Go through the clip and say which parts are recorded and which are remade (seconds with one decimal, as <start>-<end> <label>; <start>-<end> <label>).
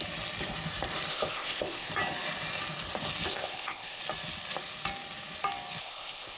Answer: 0.0-1.1 recorded; 1.1-1.9 remade; 1.9-3.3 recorded; 3.3-4.0 remade; 4.0-5.8 recorded; 5.8-6.4 remade